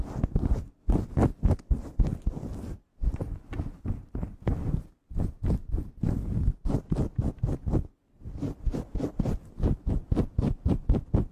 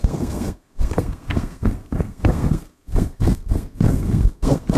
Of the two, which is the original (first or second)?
first